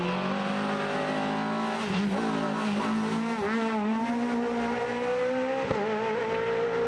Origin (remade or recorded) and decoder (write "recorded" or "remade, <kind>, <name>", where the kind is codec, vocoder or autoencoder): recorded